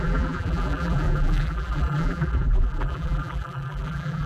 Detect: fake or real fake